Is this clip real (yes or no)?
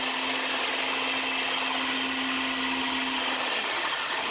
yes